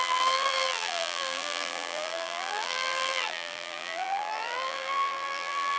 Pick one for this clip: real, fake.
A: fake